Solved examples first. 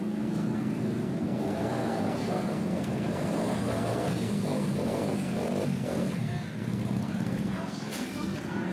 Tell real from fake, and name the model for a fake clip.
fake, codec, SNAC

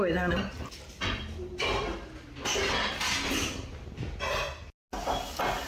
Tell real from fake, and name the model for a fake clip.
real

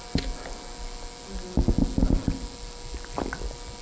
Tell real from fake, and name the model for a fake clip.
real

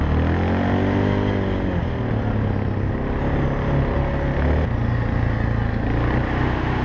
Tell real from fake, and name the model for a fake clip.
real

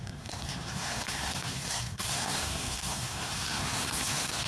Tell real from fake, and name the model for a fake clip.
fake, codec, SNAC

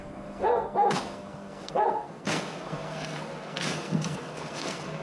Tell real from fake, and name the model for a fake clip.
fake, codec, SNAC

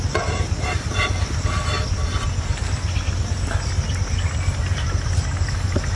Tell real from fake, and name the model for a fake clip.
real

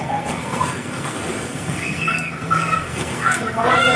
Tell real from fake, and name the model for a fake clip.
fake, codec, SNAC